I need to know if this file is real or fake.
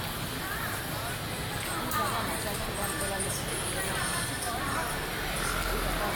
real